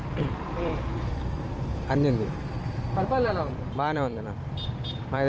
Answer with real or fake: fake